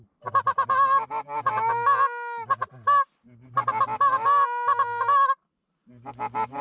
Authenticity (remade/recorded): recorded